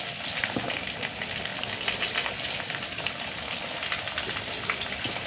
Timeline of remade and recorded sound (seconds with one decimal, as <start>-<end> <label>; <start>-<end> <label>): 0.0-5.3 recorded